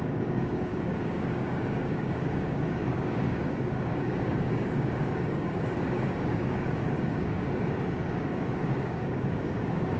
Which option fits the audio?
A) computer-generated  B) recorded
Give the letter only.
A